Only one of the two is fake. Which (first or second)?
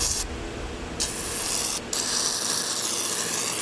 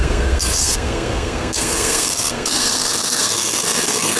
second